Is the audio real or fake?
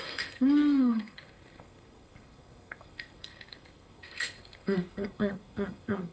fake